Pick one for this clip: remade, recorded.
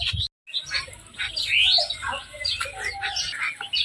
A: recorded